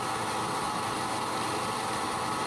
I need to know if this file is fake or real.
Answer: real